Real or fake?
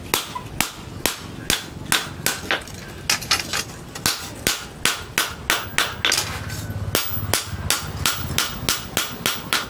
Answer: real